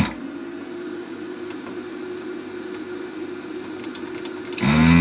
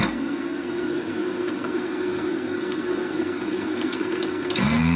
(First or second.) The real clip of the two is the first